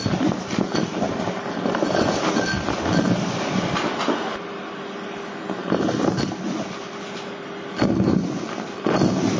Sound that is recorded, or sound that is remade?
recorded